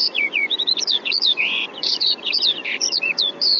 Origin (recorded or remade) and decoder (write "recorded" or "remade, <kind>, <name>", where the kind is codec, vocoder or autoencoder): remade, vocoder, Vocos